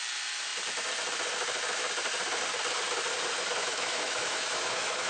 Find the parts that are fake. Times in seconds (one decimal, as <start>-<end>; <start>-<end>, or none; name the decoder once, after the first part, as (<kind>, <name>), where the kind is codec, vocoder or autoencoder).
3.6-5.1 (autoencoder, DAC-VAE)